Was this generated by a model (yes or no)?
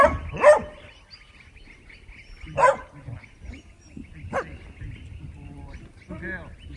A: no